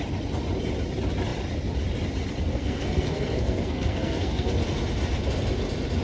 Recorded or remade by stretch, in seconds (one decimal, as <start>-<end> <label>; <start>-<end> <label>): 0.0-2.5 recorded; 2.5-4.5 remade; 4.5-6.0 recorded